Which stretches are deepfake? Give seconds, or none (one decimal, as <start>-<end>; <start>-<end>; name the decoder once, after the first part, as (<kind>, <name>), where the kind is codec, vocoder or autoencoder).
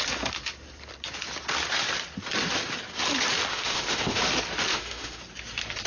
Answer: 3.5-4.2 (autoencoder, DAC-VAE); 4.7-5.2